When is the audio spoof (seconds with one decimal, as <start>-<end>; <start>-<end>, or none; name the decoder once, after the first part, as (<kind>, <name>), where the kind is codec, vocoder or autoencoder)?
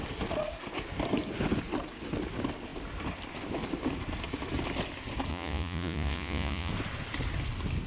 5.3-6.7 (vocoder, Vocos)